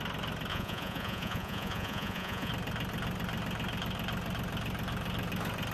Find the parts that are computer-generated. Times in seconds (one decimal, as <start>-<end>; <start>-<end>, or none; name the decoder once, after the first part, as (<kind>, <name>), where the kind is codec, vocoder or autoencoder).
0.5-2.5 (vocoder, Vocos)

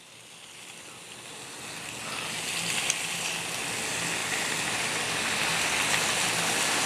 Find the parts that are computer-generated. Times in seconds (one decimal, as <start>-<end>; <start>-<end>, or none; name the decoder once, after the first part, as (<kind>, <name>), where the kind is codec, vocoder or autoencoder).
none

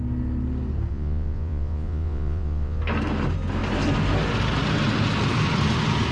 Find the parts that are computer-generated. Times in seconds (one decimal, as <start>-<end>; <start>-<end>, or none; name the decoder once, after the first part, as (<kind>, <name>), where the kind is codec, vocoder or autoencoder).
0.9-2.8 (vocoder, Vocos)

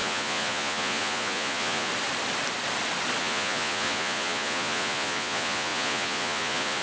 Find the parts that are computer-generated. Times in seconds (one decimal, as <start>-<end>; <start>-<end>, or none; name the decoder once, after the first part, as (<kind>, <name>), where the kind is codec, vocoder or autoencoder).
0.0-1.9 (vocoder, Vocos); 3.2-6.8